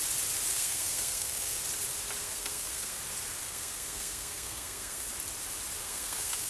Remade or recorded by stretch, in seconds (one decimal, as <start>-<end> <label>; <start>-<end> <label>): 0.0-0.5 recorded; 0.5-1.6 remade; 1.6-2.2 recorded; 2.2-3.0 remade; 3.0-3.4 recorded; 3.4-5.1 remade; 5.1-5.8 recorded; 5.8-6.5 remade